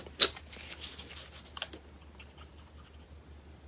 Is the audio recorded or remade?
recorded